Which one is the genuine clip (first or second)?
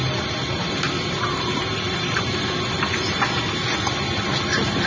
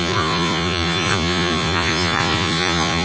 first